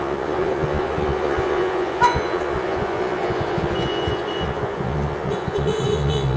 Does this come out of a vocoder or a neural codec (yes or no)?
yes